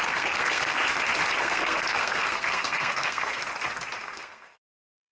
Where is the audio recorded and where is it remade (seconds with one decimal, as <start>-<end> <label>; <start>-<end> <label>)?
0.0-0.8 remade; 0.8-1.4 recorded; 1.4-3.4 remade; 3.4-4.0 recorded; 4.0-5.1 remade